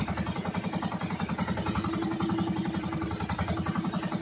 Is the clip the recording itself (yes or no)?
no